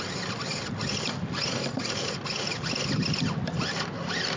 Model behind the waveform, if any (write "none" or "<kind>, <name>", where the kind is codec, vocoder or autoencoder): none